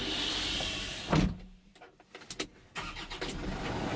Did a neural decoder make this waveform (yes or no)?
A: no